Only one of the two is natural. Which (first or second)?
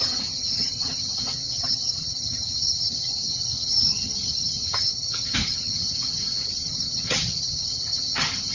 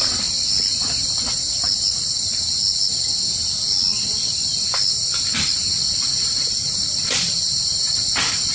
second